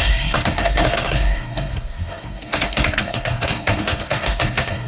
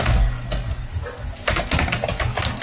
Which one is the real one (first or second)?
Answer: second